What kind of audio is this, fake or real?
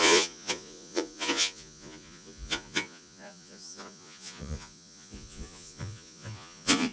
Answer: fake